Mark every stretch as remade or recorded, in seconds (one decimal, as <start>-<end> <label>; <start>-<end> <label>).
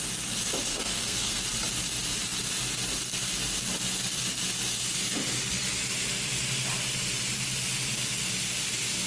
0.0-0.7 recorded; 0.7-1.4 remade; 1.4-9.1 recorded